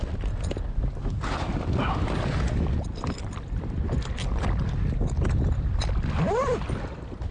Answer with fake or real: real